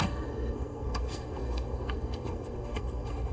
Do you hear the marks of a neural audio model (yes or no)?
yes